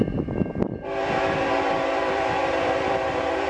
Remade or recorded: remade